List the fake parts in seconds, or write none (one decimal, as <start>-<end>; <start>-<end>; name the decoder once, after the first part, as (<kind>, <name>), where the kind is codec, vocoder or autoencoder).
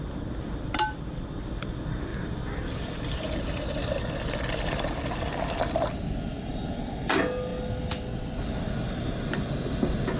none